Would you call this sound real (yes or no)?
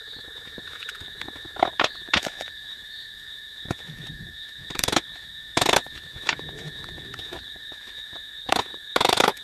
no